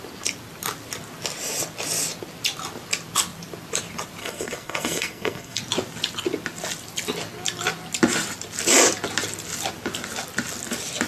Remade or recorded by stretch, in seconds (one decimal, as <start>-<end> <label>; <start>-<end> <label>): 0.0-4.2 recorded; 4.2-5.6 remade; 5.6-11.1 recorded